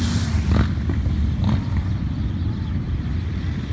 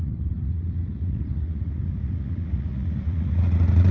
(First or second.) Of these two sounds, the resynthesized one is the second